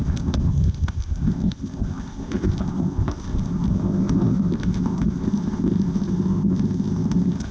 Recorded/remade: remade